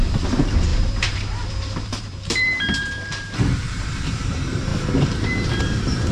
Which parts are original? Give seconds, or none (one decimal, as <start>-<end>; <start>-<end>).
4.7-5.6